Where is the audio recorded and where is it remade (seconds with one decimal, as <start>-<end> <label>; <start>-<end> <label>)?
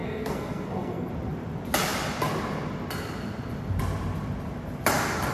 0.0-1.1 remade; 1.1-5.3 recorded